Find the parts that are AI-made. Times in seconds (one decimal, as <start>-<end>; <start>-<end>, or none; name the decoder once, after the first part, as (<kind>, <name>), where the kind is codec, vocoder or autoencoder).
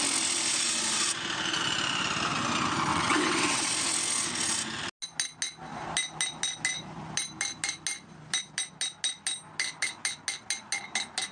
2.9-3.7 (vocoder, WaveNeXt)